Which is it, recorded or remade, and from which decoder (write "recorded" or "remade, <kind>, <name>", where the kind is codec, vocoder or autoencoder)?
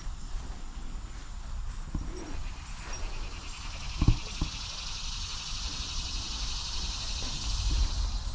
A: recorded